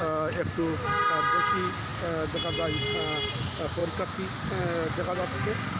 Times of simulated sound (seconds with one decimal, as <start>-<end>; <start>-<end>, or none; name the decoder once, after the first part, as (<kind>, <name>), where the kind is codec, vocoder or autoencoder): none